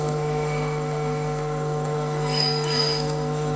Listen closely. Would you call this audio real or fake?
fake